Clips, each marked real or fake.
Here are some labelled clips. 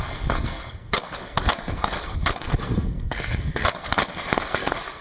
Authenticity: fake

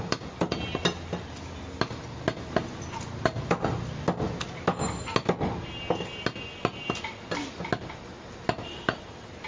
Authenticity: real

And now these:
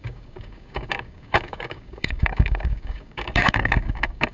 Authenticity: fake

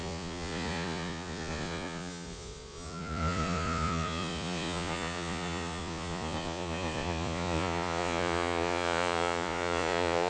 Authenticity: fake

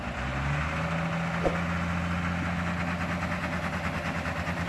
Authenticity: real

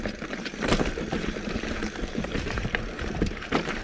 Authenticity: fake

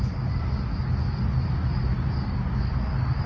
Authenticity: real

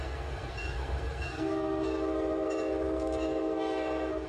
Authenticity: fake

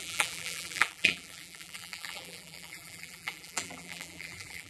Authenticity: fake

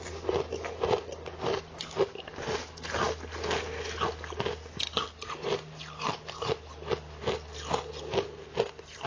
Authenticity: real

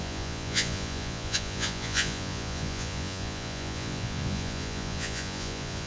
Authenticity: fake